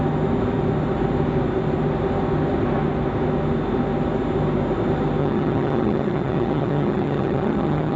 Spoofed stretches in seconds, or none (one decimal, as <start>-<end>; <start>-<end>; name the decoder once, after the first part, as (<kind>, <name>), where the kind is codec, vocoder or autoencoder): 5.2-8.0 (vocoder, HiFi-GAN)